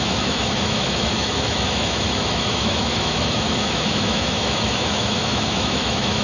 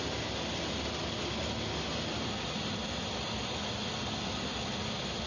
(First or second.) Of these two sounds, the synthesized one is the first